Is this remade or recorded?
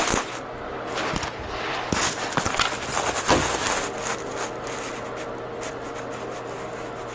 recorded